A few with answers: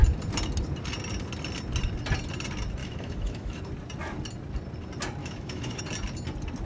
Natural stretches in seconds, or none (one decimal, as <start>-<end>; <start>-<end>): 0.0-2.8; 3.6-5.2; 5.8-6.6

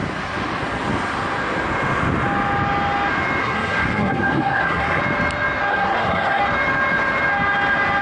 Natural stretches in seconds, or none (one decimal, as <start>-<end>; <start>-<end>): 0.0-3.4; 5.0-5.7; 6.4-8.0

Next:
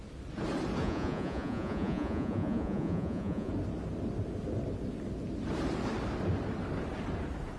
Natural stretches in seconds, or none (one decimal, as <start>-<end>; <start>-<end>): 0.0-0.8; 3.5-7.6

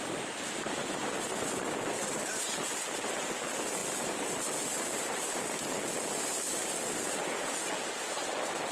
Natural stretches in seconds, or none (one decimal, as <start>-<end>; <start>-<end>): 0.0-7.2; 7.7-8.7